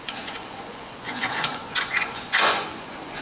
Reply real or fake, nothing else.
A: fake